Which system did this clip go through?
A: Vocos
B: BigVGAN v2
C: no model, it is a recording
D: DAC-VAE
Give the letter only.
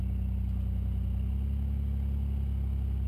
C